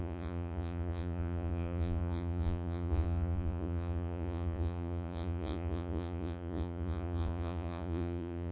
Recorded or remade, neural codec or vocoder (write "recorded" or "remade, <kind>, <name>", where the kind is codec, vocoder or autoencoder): remade, vocoder, Vocos